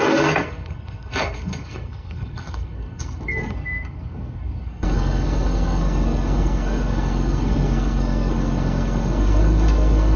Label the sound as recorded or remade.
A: remade